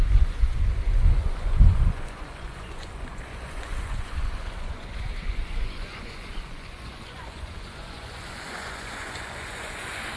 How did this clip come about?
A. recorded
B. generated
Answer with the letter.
B